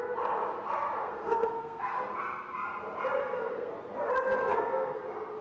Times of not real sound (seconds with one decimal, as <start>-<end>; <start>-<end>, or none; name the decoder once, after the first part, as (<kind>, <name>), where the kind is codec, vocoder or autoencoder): 1.0-1.8 (codec, SNAC); 3.2-3.7; 4.4-5.0